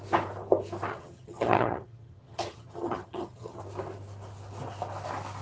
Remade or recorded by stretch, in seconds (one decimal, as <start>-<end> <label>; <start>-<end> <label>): 0.0-0.9 recorded; 0.9-3.6 remade; 3.6-5.4 recorded